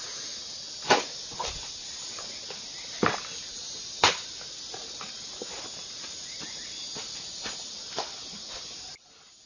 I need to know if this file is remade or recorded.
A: recorded